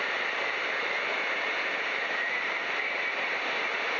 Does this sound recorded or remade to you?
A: remade